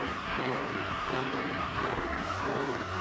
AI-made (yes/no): yes